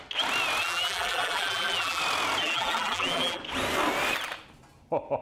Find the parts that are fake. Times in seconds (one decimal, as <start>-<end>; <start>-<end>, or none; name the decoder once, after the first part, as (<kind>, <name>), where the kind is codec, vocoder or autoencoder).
0.6-2.0 (vocoder, BigVGAN v2); 2.4-3.4